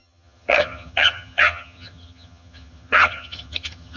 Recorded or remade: remade